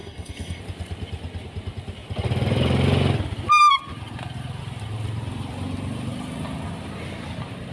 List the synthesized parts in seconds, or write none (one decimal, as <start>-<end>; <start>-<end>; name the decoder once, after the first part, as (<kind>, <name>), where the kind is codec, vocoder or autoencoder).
0.0-0.6 (codec, DAC)